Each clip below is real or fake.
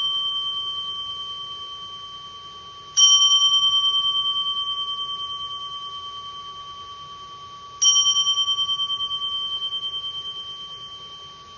real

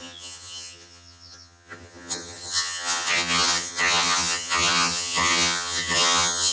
fake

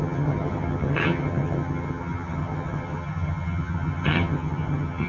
fake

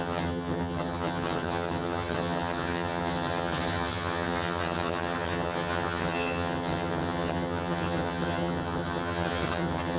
fake